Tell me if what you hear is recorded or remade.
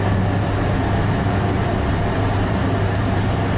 recorded